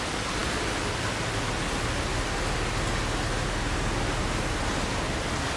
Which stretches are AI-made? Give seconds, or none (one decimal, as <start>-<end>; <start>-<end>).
none